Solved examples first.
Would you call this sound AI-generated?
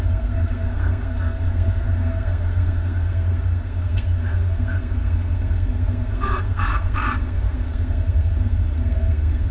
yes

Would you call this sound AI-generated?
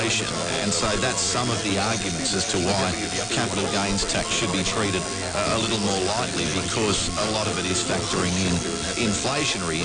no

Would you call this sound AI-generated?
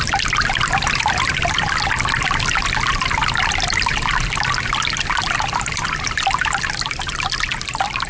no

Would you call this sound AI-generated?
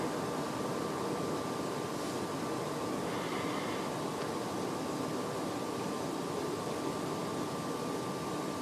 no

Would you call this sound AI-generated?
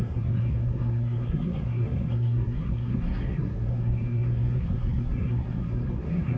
yes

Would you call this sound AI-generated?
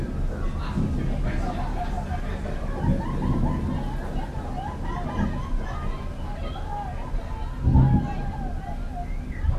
no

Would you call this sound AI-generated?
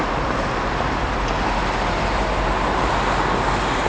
no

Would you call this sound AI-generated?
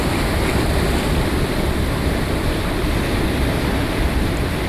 no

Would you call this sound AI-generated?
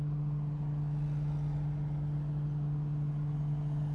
no